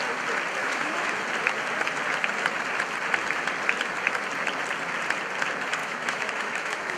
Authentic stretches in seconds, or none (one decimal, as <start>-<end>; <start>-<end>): 0.0-0.6; 1.2-5.8